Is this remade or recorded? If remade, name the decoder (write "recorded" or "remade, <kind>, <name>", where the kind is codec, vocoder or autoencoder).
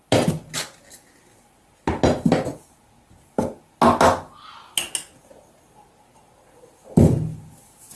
recorded